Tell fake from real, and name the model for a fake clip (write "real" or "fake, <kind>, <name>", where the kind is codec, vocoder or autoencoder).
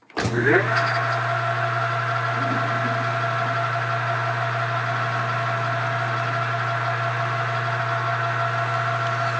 real